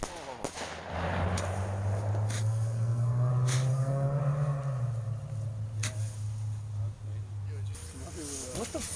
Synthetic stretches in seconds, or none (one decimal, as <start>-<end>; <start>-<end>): 2.4-3.3; 3.7-4.2